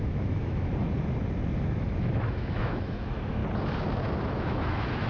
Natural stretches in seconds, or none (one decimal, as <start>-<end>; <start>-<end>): 0.7-1.8; 3.4-4.4